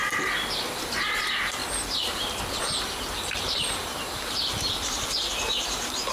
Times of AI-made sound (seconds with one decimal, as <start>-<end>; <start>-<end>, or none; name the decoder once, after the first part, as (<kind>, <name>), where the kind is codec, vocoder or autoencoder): 0.8-6.1 (vocoder, BigVGAN v2)